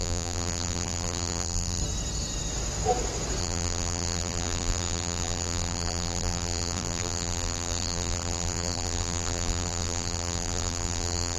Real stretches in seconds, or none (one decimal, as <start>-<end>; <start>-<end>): 1.8-3.4